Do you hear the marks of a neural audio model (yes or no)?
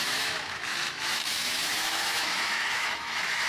yes